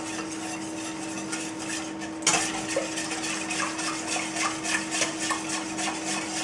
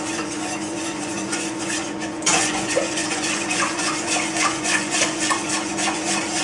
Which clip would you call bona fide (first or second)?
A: first